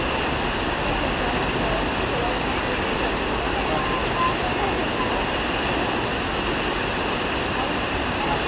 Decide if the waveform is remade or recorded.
recorded